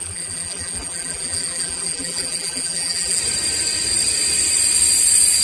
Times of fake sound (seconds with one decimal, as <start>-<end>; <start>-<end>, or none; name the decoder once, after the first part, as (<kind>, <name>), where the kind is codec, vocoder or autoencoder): 0.0-3.2 (vocoder, BigVGAN v2)